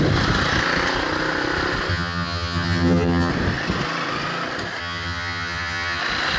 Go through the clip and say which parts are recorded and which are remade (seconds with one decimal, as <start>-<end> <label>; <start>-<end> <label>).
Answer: 0.0-1.9 recorded; 1.9-3.3 remade; 3.3-4.8 recorded; 4.8-6.0 remade; 6.0-6.4 recorded